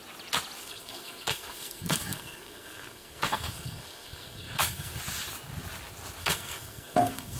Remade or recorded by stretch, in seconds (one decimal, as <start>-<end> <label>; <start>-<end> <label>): 0.0-0.6 recorded; 0.6-5.0 remade; 5.0-6.2 recorded; 6.2-7.4 remade